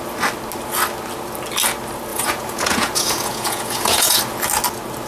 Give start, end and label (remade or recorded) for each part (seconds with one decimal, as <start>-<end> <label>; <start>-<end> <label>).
0.0-2.1 recorded; 2.1-4.2 remade; 4.2-5.1 recorded